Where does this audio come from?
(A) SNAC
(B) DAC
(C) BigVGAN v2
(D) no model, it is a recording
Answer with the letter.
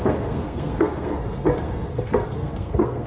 A